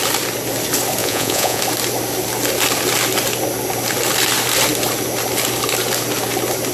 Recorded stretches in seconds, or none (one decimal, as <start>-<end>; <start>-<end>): 0.0-1.0; 1.6-6.7